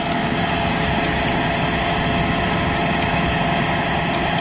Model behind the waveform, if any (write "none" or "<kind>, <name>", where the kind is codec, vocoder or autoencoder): none